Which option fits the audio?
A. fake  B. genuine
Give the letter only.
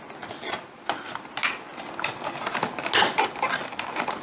B